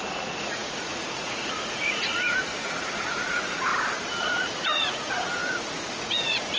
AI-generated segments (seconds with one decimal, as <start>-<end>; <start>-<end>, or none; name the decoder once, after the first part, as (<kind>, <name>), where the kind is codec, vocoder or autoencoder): 0.0-3.7 (vocoder, Vocos); 4.2-6.6